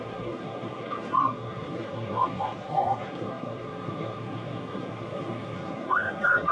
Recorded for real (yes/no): no